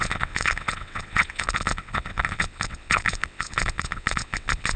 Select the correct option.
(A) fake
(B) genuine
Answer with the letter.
A